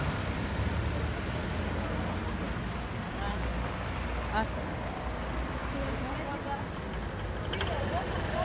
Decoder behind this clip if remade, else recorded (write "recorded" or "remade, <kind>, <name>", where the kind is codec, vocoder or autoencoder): recorded